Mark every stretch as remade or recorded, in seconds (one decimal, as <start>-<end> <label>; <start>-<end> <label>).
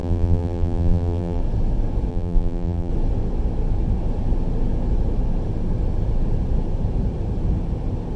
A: 0.0-1.4 remade; 1.4-2.1 recorded; 2.1-2.9 remade; 2.9-8.2 recorded